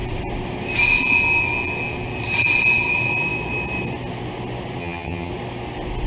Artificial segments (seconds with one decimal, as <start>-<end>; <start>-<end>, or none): 4.8-5.3

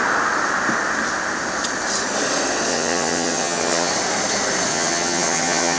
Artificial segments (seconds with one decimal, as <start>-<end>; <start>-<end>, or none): 2.7-3.9; 4.7-5.8